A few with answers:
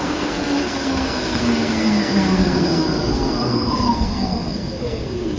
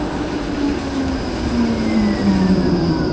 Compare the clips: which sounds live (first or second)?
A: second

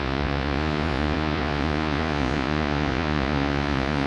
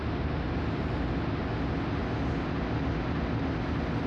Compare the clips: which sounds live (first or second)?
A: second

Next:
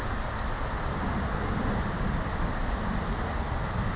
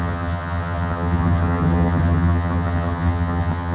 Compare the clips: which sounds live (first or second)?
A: first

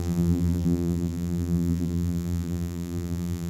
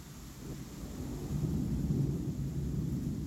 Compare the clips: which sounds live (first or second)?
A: second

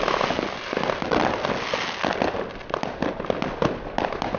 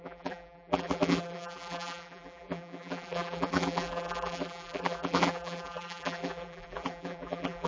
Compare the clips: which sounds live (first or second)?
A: first